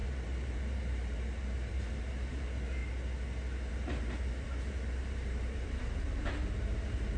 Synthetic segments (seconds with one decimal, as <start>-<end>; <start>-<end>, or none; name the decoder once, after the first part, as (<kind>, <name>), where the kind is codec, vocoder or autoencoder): 0.0-2.8 (vocoder, BigVGAN v2); 3.7-7.2